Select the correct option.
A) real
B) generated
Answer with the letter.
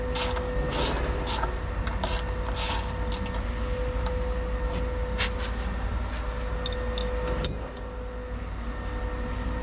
A